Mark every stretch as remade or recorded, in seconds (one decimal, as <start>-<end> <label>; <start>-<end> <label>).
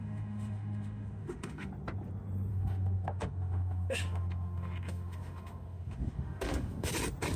0.0-1.7 remade; 1.7-2.5 recorded; 2.5-6.9 remade; 6.9-7.4 recorded